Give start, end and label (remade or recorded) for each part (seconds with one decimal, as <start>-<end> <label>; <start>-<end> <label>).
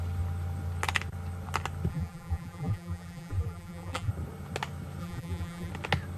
0.0-1.9 recorded; 1.9-4.1 remade; 4.1-5.0 recorded; 5.0-5.7 remade; 5.7-6.2 recorded